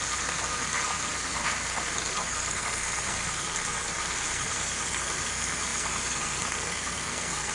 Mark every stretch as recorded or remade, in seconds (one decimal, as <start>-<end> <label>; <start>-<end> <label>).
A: 0.0-7.5 remade